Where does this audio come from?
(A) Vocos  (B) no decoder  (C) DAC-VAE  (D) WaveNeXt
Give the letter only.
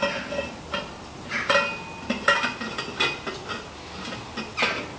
B